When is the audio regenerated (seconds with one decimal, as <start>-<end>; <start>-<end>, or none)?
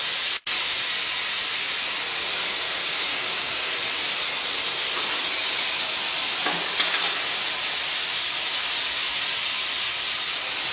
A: 3.1-3.8